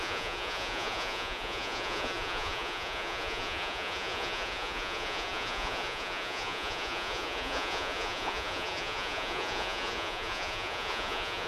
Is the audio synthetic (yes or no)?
yes